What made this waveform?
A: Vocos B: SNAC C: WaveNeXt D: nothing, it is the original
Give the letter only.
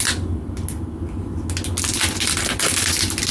D